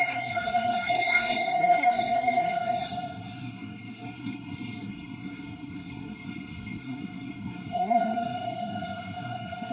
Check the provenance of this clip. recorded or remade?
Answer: remade